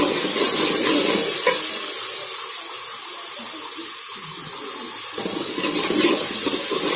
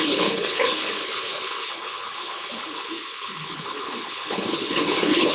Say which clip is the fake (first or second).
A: second